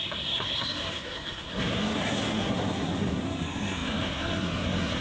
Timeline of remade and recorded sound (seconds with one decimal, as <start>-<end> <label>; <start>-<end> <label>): 0.0-5.0 remade